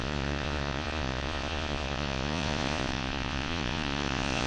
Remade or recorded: remade